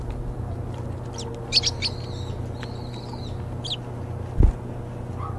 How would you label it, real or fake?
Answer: real